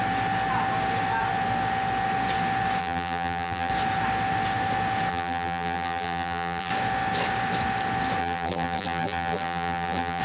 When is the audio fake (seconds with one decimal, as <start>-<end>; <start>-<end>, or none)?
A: 2.8-3.7; 5.1-6.7; 8.2-10.2